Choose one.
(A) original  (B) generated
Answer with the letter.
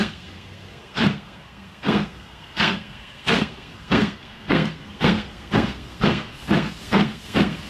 B